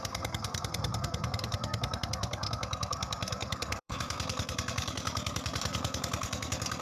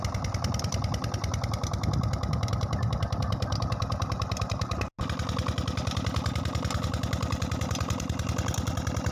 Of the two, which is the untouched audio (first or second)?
second